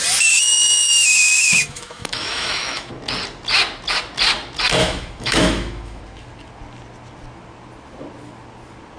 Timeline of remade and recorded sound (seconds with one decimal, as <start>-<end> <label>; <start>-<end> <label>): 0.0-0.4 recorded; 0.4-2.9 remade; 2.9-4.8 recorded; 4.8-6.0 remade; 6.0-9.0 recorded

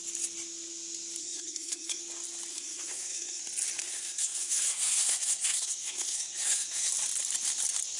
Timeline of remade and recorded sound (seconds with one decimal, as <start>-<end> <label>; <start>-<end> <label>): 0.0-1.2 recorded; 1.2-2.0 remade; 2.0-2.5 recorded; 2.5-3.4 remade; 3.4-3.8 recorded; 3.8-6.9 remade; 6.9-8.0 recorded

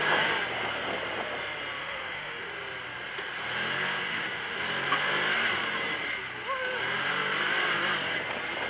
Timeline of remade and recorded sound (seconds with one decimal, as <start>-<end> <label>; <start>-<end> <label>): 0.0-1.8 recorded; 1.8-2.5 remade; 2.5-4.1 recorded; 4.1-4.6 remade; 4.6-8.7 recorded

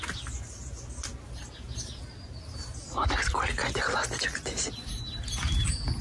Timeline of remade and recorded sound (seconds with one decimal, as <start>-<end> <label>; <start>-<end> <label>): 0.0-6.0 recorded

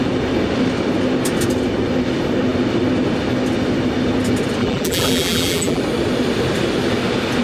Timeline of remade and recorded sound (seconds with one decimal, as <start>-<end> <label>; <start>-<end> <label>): 0.0-4.6 recorded; 4.6-5.8 remade; 5.8-7.4 recorded

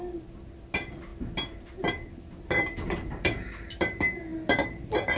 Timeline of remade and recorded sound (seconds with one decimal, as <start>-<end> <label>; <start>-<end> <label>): 0.0-1.1 recorded; 1.1-3.5 remade; 3.5-5.2 recorded

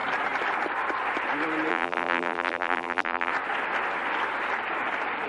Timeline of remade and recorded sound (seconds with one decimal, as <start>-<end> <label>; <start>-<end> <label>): 0.0-1.7 recorded; 1.7-3.3 remade; 3.3-5.3 recorded